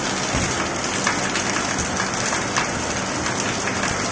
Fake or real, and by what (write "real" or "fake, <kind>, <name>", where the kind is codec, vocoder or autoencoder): real